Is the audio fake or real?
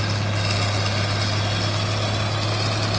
real